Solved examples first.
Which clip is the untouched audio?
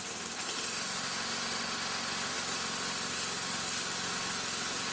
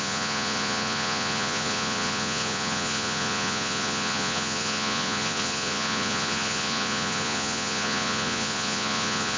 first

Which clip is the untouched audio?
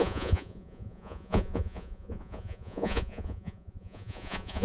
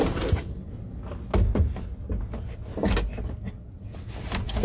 second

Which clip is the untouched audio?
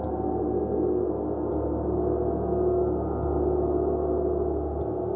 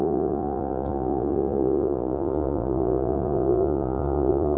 first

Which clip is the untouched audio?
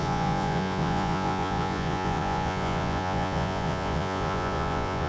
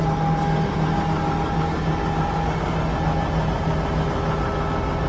second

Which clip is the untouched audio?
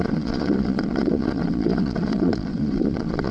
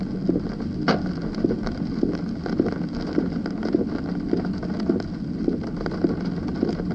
second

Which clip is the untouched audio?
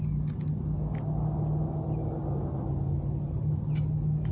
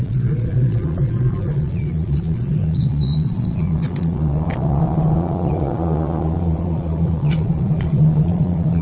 first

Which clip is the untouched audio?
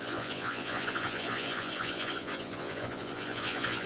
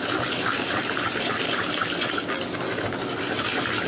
second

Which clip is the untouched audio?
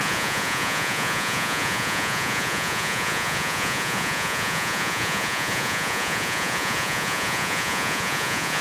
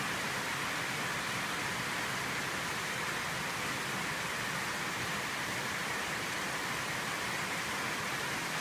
second